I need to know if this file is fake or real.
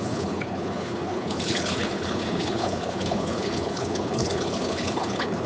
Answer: fake